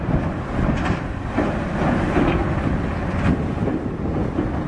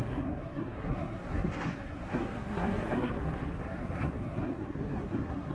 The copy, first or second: second